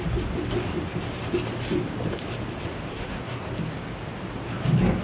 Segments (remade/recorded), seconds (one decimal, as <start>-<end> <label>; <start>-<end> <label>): 0.0-2.9 recorded; 2.9-3.5 remade; 3.5-5.0 recorded